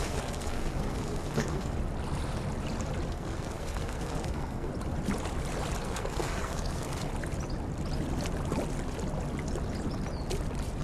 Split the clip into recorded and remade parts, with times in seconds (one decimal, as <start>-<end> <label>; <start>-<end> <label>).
0.0-1.8 remade; 1.8-3.1 recorded; 3.1-4.7 remade; 4.7-5.8 recorded; 5.8-7.1 remade; 7.1-10.8 recorded